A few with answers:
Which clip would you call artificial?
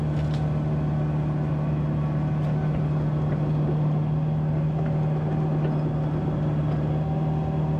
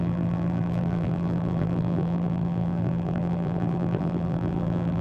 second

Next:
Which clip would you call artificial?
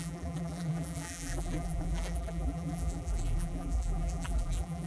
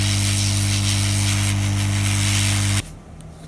first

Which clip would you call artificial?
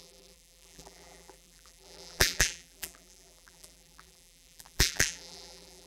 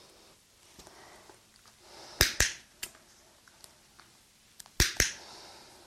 first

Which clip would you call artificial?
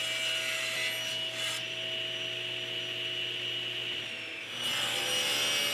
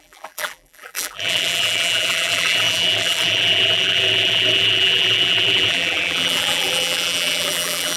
second